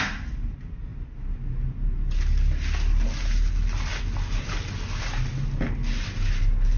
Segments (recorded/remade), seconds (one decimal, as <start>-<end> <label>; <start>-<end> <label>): 0.0-6.8 recorded